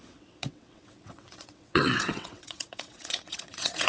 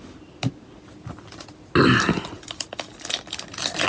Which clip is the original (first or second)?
second